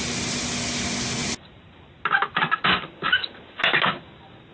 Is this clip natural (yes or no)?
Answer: yes